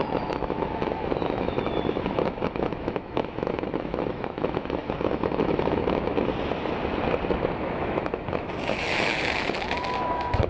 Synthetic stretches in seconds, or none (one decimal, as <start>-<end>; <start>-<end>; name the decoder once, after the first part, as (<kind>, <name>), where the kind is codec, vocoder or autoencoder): 0.0-6.1 (autoencoder, DAC-VAE); 7.6-10.5